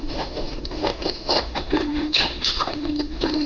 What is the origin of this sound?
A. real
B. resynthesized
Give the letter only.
B